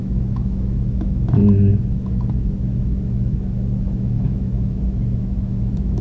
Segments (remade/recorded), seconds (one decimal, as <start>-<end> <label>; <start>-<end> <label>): 0.0-6.0 remade